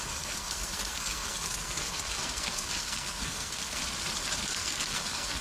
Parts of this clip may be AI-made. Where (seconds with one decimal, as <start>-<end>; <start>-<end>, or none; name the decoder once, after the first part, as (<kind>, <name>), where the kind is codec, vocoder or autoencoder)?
0.0-3.8 (codec, SNAC); 4.4-5.4